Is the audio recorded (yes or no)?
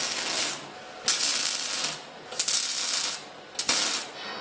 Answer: yes